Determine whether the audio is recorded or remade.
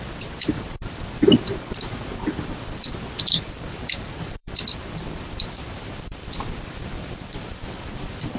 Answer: remade